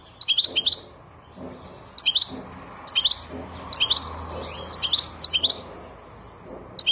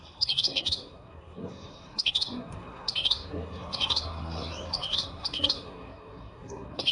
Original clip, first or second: first